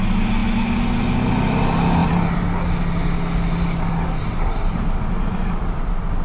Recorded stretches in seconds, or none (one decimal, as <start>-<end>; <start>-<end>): 0.0-6.2